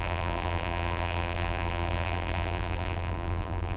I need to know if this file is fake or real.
fake